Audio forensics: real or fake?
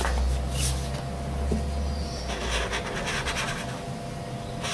real